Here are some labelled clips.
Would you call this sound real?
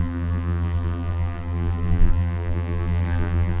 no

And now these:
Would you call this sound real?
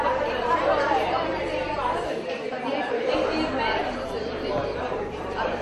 no